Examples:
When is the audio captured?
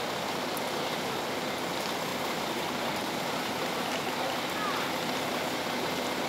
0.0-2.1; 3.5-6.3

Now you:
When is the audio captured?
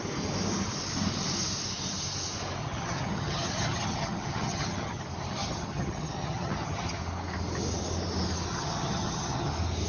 0.0-2.6; 5.0-5.4; 7.0-8.5; 9.5-9.9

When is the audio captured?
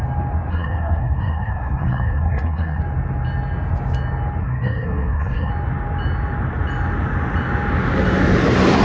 0.0-0.5; 2.8-4.4; 5.5-8.8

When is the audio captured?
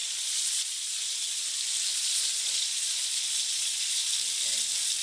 1.5-1.9; 4.1-5.0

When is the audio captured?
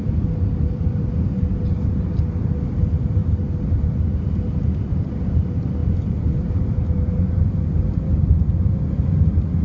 1.6-5.8; 8.2-9.6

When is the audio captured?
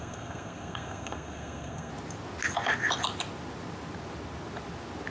1.9-5.1